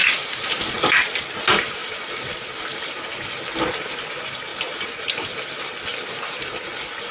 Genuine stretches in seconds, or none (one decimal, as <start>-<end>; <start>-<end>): 0.8-7.1